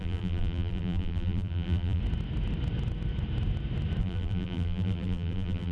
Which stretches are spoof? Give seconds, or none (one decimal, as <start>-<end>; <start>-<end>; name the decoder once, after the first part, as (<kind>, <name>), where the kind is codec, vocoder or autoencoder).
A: 0.0-2.0 (vocoder, BigVGAN v2); 4.0-5.7